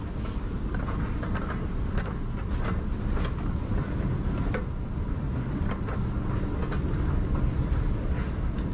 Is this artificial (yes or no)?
no